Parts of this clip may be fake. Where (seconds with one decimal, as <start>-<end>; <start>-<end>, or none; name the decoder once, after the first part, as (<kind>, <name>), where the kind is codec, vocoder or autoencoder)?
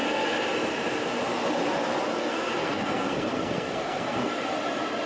2.2-4.3 (codec, SNAC)